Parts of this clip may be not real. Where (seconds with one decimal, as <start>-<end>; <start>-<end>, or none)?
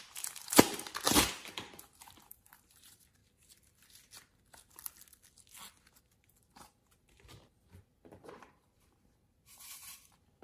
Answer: 0.0-3.2; 6.0-10.4